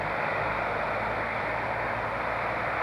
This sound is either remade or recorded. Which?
remade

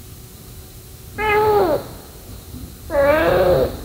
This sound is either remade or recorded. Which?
recorded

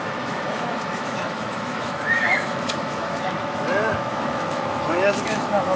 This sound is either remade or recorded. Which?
remade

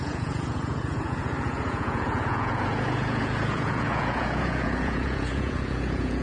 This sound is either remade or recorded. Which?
remade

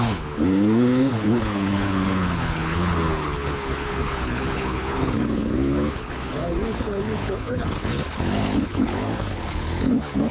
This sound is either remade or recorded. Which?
remade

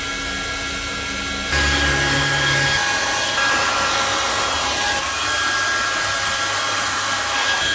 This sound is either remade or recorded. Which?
recorded